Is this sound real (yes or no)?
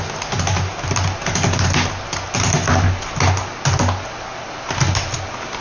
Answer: yes